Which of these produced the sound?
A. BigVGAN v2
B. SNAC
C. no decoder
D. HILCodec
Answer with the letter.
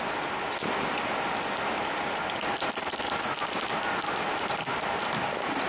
C